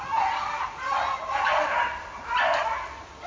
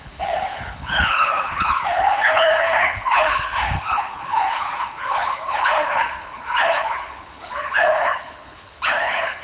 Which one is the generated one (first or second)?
second